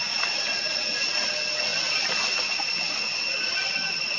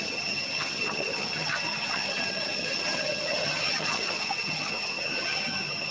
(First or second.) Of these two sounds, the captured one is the first